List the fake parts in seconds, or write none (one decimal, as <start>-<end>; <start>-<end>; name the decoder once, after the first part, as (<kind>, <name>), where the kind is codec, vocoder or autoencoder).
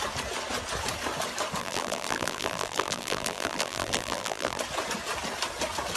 1.6-4.6 (vocoder, BigVGAN v2)